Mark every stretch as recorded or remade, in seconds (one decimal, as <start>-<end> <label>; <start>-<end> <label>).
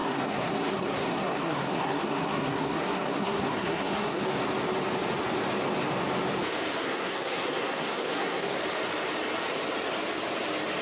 0.0-4.2 remade; 4.2-6.8 recorded; 6.8-8.6 remade; 8.6-10.8 recorded